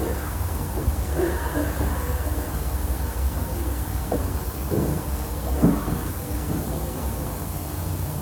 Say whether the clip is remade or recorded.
remade